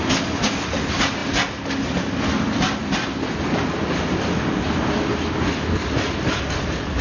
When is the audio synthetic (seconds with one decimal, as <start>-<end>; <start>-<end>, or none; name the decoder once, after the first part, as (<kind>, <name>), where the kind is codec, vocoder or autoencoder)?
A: none